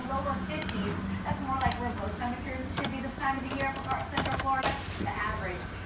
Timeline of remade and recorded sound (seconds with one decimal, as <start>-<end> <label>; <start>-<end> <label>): 0.0-0.5 remade; 0.5-5.9 recorded